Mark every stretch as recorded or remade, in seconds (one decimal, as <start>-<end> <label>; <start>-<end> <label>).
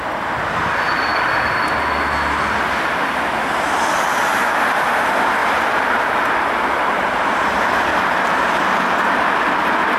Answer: 0.0-5.4 recorded; 5.4-7.4 remade; 7.4-7.9 recorded; 7.9-9.4 remade; 9.4-10.0 recorded